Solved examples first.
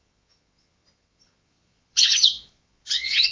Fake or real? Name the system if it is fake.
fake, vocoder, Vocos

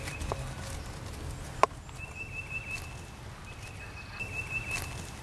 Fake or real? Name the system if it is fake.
real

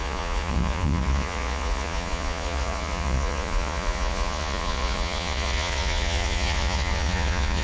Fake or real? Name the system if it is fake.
fake, vocoder, Vocos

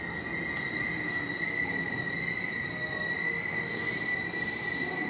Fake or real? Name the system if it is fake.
real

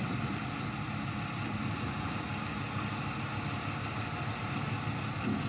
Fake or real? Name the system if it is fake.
real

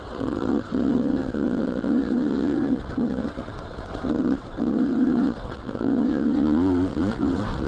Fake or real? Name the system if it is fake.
fake, vocoder, WaveNeXt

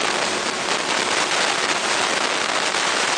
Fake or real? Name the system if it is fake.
real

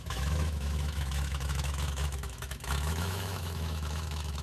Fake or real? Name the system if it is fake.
fake, autoencoder, DAC-VAE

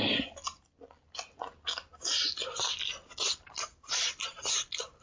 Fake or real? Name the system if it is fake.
real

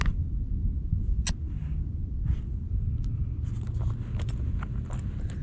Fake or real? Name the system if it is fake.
real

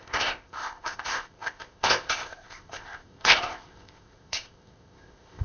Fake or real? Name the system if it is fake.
fake, codec, ZipCodec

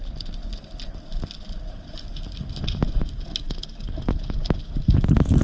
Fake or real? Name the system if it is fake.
real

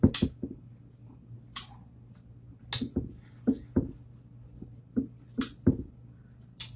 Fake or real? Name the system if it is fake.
real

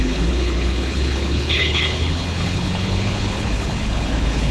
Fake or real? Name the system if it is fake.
fake, codec, HILCodec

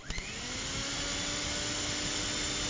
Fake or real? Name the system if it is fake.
real